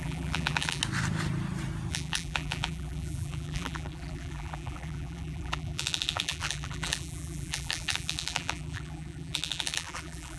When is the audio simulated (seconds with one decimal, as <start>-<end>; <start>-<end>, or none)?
0.0-0.8; 1.9-10.4